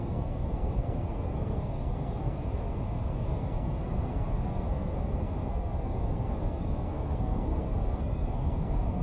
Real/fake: fake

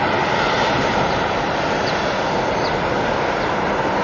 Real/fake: real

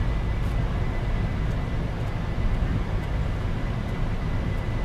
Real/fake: real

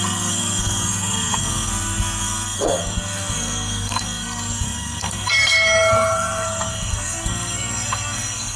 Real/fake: fake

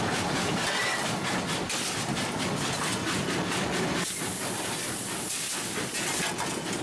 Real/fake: real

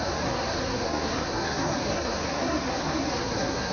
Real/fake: fake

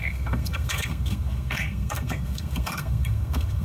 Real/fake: fake